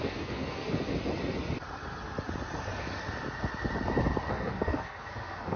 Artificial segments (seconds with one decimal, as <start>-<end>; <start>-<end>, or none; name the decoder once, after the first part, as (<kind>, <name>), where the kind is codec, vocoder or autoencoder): 0.0-0.9 (codec, SNAC); 4.3-5.6